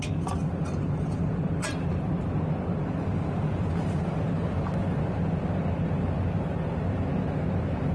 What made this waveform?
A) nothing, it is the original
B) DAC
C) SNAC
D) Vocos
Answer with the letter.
A